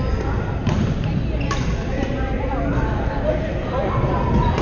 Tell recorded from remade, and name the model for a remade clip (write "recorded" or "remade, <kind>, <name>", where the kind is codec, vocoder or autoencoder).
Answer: recorded